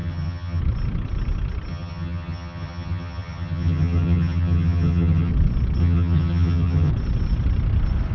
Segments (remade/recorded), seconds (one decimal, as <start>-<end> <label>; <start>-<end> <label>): 0.0-0.6 remade; 0.6-1.7 recorded; 1.7-5.3 remade; 5.3-5.8 recorded; 5.8-6.9 remade; 6.9-8.1 recorded